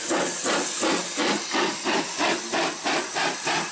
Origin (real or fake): real